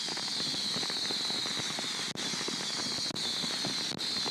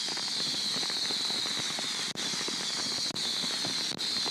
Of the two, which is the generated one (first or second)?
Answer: second